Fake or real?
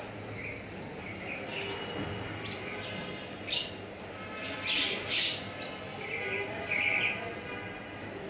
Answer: real